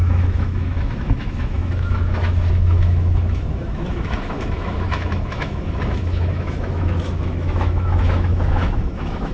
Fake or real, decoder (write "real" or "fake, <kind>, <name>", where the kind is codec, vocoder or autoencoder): fake, autoencoder, DAC-VAE